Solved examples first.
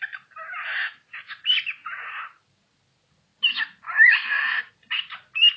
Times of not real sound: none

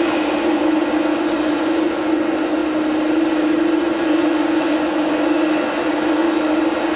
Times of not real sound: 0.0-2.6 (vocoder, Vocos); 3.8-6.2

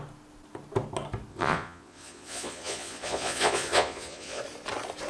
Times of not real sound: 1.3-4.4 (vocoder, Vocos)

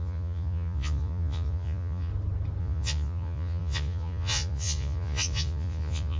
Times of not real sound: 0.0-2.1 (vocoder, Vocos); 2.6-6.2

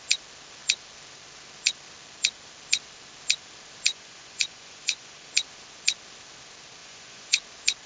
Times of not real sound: 3.9-5.3 (vocoder, Vocos); 6.8-7.4